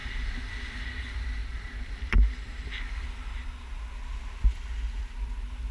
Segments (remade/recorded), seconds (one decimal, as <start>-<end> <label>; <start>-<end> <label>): 0.0-1.4 recorded; 1.4-2.8 remade; 2.8-5.7 recorded